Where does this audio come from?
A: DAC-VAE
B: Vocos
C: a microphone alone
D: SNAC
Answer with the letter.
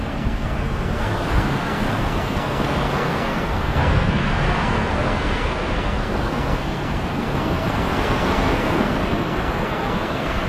D